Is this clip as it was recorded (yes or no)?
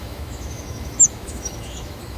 no